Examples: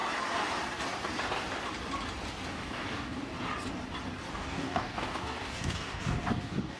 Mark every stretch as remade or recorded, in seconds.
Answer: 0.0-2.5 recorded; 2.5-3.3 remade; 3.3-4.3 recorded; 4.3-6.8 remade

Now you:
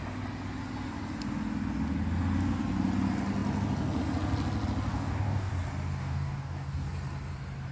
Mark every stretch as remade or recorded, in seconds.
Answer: 0.0-4.9 recorded; 4.9-5.5 remade; 5.5-6.0 recorded; 6.0-6.9 remade; 6.9-7.7 recorded